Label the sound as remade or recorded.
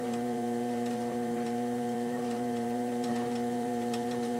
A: remade